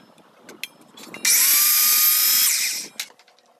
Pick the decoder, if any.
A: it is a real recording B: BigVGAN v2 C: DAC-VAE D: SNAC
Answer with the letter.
A